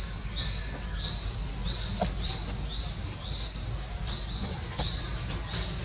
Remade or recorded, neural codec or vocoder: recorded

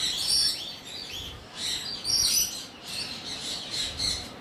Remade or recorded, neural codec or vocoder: remade, vocoder, BigVGAN v2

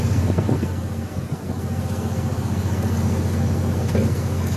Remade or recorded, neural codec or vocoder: remade, codec, SNAC